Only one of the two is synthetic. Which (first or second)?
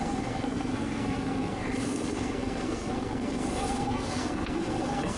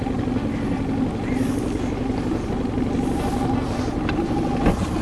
first